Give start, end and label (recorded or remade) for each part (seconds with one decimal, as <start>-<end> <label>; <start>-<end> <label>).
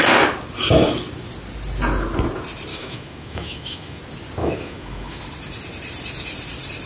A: 0.0-2.7 recorded; 2.7-4.0 remade; 4.0-4.4 recorded; 4.4-5.2 remade; 5.2-6.9 recorded